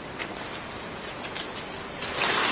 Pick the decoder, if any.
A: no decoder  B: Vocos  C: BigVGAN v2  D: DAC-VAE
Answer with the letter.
A